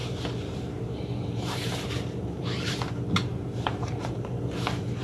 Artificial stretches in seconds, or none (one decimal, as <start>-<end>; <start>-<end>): 0.0-2.9; 3.3-4.2